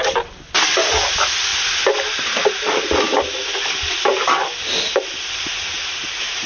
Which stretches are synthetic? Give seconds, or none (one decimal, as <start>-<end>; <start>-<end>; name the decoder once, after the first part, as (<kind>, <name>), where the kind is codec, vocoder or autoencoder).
none